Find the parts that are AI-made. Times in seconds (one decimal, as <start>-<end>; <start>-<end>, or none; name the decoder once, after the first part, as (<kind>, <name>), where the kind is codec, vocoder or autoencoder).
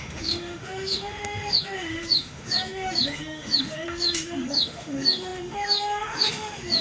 0.0-6.8 (autoencoder, DAC-VAE)